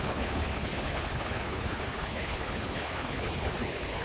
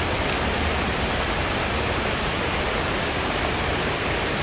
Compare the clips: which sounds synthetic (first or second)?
first